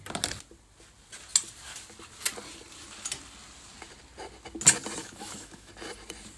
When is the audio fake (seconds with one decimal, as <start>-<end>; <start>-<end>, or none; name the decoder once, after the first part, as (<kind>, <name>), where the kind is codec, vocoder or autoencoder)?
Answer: 5.0-5.7 (autoencoder, DAC-VAE)